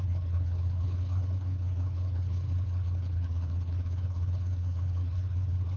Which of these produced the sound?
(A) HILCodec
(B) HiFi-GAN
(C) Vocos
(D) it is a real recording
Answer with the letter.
A